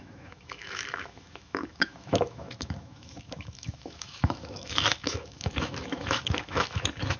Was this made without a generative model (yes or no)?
no